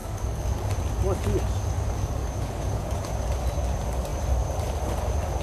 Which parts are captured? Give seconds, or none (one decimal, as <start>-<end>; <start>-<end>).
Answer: 0.7-2.2; 3.0-5.4